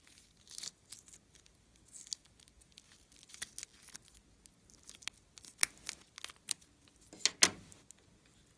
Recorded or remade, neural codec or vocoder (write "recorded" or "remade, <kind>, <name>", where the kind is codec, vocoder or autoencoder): recorded